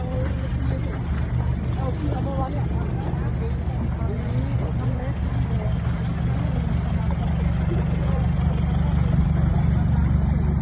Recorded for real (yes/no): yes